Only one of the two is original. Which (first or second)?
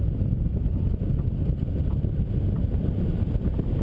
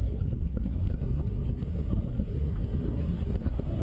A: first